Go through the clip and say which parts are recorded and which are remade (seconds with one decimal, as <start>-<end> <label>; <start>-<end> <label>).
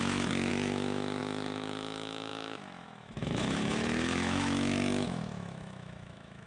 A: 0.0-6.5 remade